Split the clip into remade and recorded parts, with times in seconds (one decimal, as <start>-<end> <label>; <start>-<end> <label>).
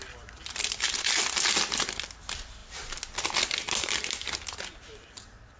0.0-5.6 recorded